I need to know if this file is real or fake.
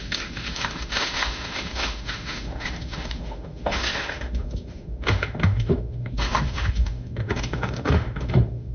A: fake